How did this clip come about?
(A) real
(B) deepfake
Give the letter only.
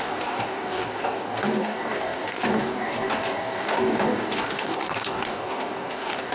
B